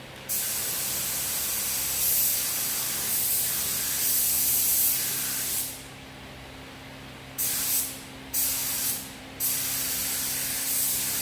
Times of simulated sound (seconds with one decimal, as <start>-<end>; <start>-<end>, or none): none